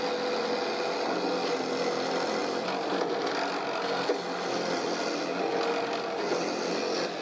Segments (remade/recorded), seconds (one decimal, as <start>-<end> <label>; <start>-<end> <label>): 0.0-7.2 recorded

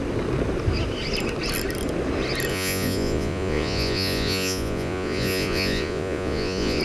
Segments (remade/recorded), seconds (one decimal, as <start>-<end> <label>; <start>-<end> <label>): 0.0-2.5 recorded; 2.5-6.8 remade

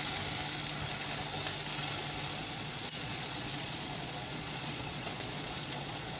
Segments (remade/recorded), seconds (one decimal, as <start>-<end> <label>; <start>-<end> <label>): 0.0-2.4 recorded; 2.4-6.2 remade

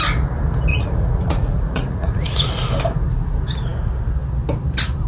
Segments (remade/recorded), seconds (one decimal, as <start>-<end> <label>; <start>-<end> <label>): 0.0-0.7 recorded; 0.7-2.5 remade; 2.5-5.1 recorded

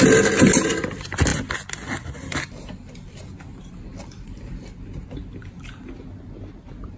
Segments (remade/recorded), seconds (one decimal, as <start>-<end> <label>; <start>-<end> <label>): 0.0-7.0 recorded

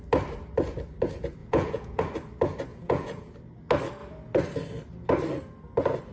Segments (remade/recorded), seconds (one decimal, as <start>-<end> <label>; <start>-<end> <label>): 0.0-1.4 recorded; 1.4-2.0 remade; 2.0-2.7 recorded; 2.7-3.3 remade; 3.3-6.1 recorded